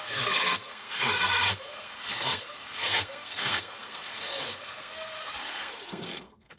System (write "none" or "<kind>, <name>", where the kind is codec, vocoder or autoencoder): codec, SNAC